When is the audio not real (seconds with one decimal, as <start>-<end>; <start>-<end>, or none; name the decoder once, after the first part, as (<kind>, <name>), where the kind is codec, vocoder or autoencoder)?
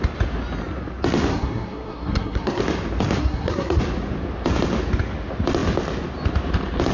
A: 1.3-2.6 (codec, SNAC); 3.2-3.8